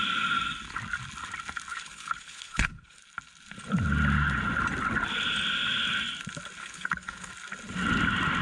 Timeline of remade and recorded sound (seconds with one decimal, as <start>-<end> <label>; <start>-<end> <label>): 0.0-1.7 recorded; 1.7-3.0 remade; 3.0-6.6 recorded; 6.6-7.3 remade; 7.3-8.4 recorded